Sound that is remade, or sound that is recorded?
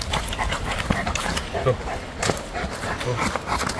remade